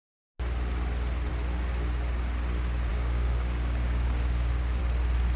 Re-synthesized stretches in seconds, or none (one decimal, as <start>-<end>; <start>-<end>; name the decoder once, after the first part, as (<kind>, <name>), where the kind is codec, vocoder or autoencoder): 2.9-4.8 (codec, DAC)